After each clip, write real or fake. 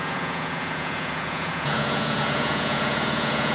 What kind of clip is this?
fake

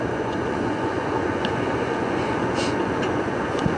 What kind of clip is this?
fake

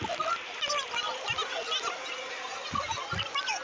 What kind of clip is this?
real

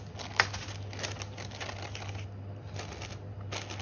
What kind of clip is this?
real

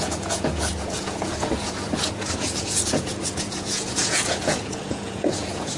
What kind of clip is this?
fake